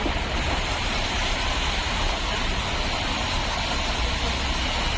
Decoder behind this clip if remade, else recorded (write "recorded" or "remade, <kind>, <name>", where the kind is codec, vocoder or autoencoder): recorded